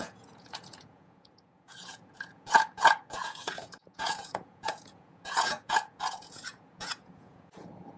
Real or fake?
fake